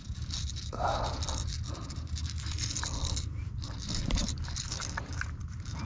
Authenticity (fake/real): fake